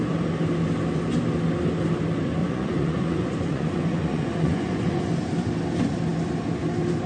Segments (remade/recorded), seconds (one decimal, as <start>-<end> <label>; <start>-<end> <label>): 0.0-2.4 recorded; 2.4-5.0 remade; 5.0-7.1 recorded